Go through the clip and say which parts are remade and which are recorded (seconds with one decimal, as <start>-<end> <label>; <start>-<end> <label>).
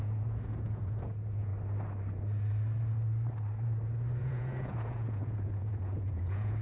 0.0-1.5 remade; 1.5-4.2 recorded; 4.2-6.6 remade